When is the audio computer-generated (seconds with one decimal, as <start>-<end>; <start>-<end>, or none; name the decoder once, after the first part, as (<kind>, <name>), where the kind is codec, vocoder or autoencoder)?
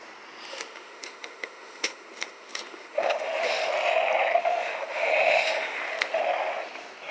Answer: 0.5-3.7 (autoencoder, DAC-VAE); 4.4-6.2